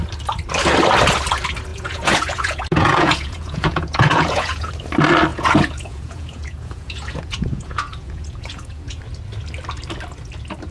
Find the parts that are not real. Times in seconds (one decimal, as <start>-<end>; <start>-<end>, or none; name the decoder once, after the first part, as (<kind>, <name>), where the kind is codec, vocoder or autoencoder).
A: 1.7-4.7 (vocoder, Vocos); 5.3-9.0